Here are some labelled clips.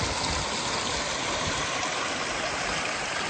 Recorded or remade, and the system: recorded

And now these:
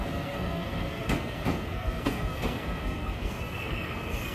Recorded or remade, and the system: remade, codec, SNAC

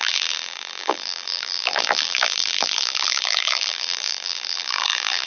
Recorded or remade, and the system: remade, vocoder, BigVGAN v2